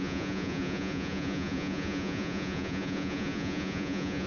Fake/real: fake